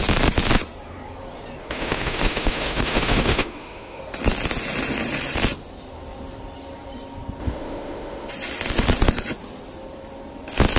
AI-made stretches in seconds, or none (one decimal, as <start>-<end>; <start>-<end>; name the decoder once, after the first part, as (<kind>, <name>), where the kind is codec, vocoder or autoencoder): 1.6-4.0 (autoencoder, DAC-VAE); 7.4-8.3